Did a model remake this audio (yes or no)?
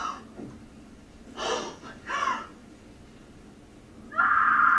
no